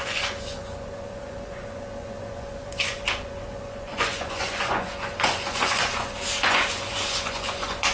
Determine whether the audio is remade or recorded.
remade